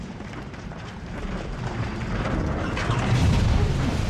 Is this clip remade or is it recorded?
remade